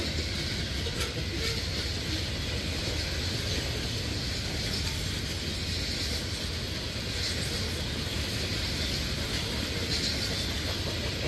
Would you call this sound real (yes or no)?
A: yes